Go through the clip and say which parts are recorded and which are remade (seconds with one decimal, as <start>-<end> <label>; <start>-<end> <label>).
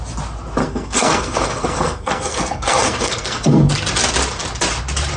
0.0-0.6 recorded; 0.6-3.7 remade; 3.7-5.2 recorded